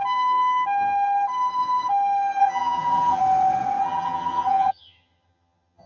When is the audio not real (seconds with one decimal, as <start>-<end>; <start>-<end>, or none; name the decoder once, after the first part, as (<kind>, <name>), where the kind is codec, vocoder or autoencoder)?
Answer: 2.4-3.2 (vocoder, HiFi-GAN); 3.8-5.9

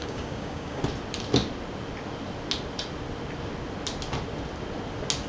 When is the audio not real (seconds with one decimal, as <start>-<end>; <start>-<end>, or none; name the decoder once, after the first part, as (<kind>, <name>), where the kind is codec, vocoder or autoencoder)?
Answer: 0.0-0.8 (codec, DAC)

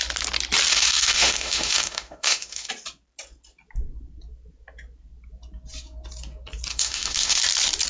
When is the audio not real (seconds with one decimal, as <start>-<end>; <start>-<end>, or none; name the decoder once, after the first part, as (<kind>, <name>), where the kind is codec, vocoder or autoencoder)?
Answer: 0.7-2.7 (autoencoder, DAC-VAE); 6.7-7.4

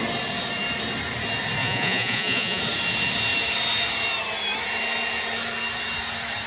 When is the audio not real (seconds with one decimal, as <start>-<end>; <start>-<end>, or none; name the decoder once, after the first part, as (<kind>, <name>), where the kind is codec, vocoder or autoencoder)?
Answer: 1.6-2.6 (vocoder, Vocos)

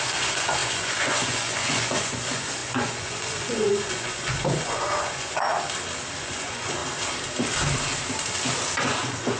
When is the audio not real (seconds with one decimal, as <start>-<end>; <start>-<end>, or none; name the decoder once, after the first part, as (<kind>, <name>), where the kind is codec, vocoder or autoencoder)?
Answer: 0.0-5.5 (vocoder, Vocos); 6.2-6.8; 8.8-9.4

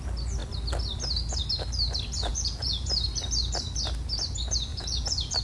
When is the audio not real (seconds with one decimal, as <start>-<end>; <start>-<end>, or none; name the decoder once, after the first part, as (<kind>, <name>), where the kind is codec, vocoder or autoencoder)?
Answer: 2.3-2.9 (vocoder, Vocos); 4.7-5.4

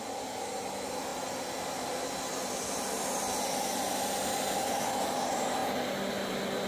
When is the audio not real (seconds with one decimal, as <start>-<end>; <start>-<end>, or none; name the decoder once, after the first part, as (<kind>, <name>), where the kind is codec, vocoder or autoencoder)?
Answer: none